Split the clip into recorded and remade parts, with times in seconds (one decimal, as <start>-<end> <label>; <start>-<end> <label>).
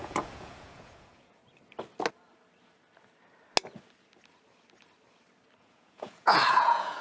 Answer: 0.0-1.4 remade; 1.4-5.6 recorded; 5.6-7.0 remade